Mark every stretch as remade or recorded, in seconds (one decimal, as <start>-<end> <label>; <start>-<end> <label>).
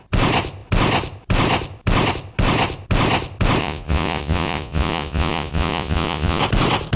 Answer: 0.0-3.6 recorded; 3.6-6.4 remade; 6.4-7.0 recorded